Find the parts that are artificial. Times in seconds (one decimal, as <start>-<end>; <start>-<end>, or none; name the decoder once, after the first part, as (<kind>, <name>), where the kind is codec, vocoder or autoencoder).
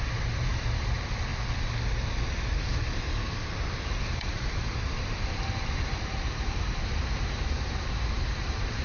0.0-1.3 (vocoder, BigVGAN v2); 2.5-8.8